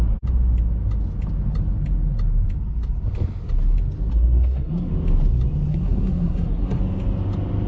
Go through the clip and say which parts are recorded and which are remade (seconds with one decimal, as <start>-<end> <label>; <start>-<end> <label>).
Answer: 0.0-4.1 recorded; 4.1-4.9 remade; 4.9-5.7 recorded; 5.7-6.8 remade; 6.8-7.7 recorded